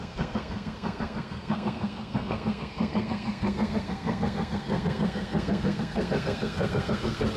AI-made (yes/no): yes